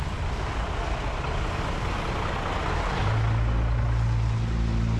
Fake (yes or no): no